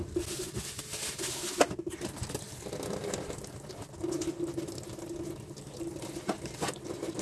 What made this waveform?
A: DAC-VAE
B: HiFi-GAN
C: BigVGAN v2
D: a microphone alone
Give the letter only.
D